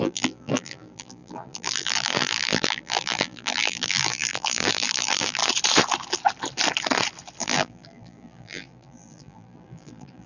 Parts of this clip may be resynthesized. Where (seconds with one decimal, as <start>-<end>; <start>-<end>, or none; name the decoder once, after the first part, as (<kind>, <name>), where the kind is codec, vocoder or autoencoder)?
0.0-5.4 (vocoder, BigVGAN v2); 7.4-10.3